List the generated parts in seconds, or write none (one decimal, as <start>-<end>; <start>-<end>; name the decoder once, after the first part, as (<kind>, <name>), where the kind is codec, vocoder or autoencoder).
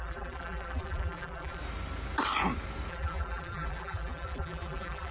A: 0.0-1.6 (vocoder, BigVGAN v2); 2.9-5.1